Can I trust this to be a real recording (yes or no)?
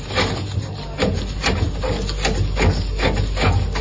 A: yes